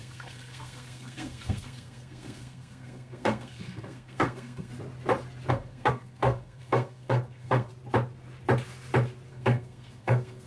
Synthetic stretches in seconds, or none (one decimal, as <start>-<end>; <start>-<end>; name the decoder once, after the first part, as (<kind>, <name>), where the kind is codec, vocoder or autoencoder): 0.0-4.7 (codec, SNAC); 5.5-7.7; 9.3-10.5